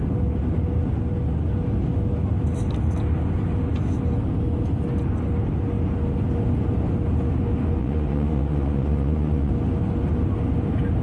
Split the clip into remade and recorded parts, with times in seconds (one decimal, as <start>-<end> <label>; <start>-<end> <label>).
0.0-7.8 recorded; 7.8-9.5 remade; 9.5-11.0 recorded